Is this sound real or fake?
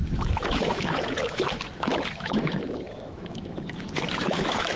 fake